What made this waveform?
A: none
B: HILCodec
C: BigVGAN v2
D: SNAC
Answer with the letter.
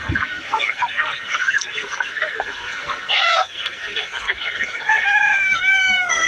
D